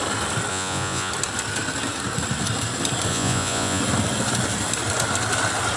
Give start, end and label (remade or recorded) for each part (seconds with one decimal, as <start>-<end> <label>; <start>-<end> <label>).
0.0-0.5 recorded; 0.5-1.1 remade; 1.1-3.1 recorded; 3.1-3.8 remade; 3.8-5.8 recorded